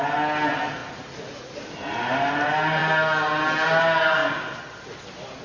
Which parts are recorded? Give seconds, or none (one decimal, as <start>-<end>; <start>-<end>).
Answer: 0.0-5.4